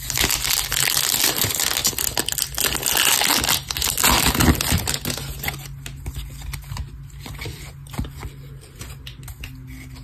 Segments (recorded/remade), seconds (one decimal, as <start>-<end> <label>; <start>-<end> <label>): 0.0-10.0 recorded